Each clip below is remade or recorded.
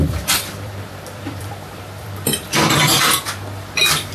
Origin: remade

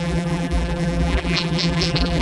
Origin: remade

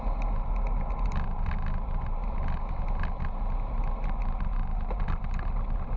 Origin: recorded